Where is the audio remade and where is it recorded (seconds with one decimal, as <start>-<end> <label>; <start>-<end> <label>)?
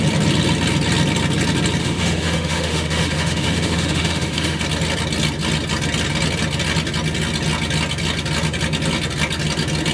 0.0-1.8 recorded; 1.8-4.6 remade; 4.6-9.9 recorded